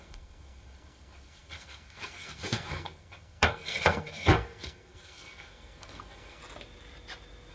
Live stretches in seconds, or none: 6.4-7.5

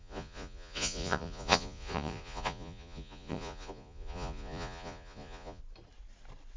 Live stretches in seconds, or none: 5.6-6.6